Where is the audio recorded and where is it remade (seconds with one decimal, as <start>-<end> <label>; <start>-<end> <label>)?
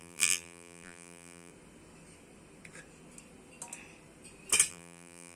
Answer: 0.0-1.5 remade; 1.5-4.7 recorded; 4.7-5.4 remade